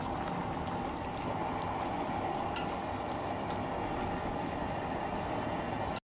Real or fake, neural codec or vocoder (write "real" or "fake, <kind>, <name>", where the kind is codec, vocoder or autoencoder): real